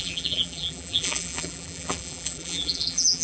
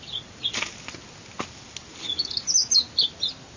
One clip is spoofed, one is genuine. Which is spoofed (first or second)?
first